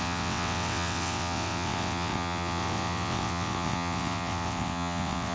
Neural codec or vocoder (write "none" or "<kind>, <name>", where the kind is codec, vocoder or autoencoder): vocoder, WaveNeXt